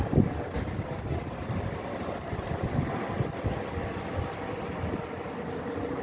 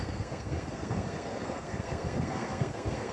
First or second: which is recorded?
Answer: first